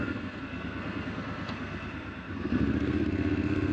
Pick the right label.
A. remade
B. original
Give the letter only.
A